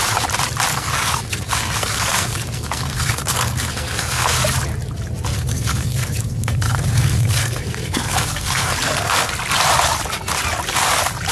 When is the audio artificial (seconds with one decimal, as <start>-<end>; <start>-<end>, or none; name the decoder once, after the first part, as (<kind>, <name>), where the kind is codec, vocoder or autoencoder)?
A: 0.7-4.4 (codec, SNAC); 5.3-9.3